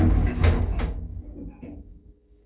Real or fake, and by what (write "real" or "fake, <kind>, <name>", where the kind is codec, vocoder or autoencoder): fake, codec, DAC